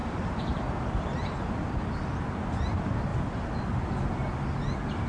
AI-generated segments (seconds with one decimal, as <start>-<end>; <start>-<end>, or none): none